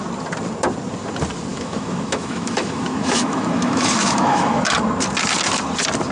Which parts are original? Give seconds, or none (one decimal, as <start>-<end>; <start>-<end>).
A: 0.0-1.5; 4.6-6.1